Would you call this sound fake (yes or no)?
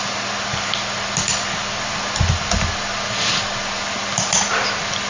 no